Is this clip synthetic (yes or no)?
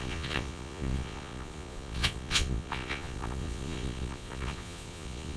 yes